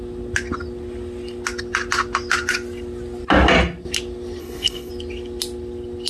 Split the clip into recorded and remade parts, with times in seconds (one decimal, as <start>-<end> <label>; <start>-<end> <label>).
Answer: 0.0-4.4 recorded; 4.4-4.9 remade; 4.9-6.1 recorded